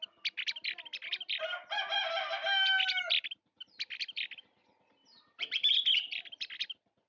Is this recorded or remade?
recorded